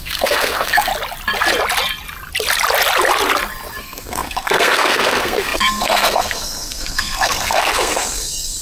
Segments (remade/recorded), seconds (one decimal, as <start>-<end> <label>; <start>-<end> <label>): 0.0-0.9 remade; 0.9-3.8 recorded; 3.8-8.6 remade